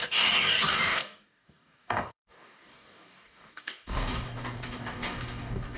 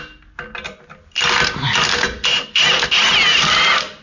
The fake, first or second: first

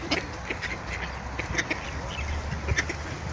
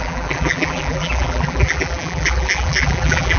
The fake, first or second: second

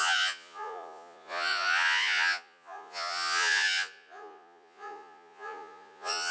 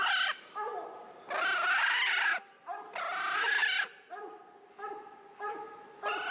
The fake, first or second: first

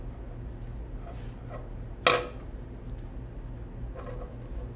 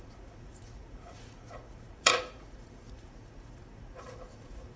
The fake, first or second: second